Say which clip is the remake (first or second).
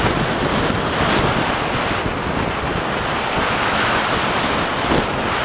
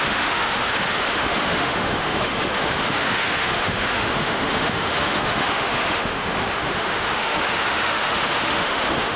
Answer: second